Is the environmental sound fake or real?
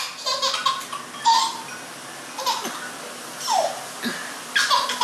real